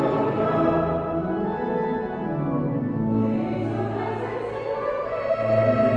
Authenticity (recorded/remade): recorded